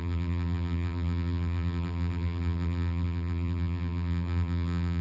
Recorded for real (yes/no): no